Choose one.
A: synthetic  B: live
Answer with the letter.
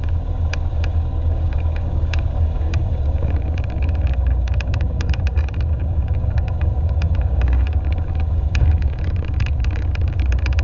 A